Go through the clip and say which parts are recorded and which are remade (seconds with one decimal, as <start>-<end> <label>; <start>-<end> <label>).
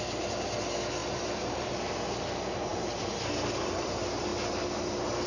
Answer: 0.0-1.0 recorded; 1.0-1.7 remade; 1.7-2.7 recorded; 2.7-3.9 remade; 3.9-5.3 recorded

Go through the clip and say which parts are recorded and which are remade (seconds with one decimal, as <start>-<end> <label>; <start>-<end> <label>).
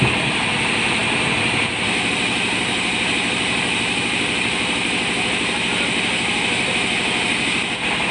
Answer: 0.0-8.1 recorded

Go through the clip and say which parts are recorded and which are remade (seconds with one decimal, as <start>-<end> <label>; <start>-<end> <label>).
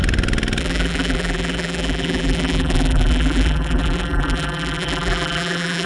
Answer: 0.0-0.6 recorded; 0.6-5.9 remade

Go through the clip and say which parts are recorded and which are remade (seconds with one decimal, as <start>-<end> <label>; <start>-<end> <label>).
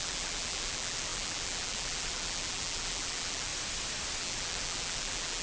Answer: 0.0-3.5 remade; 3.5-4.2 recorded; 4.2-5.4 remade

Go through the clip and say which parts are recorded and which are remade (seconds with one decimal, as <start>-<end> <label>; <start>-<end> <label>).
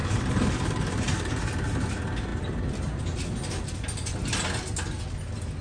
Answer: 0.0-5.6 recorded